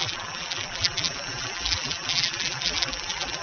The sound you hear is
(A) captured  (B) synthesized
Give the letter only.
B